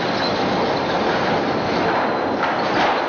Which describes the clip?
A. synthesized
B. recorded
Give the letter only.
B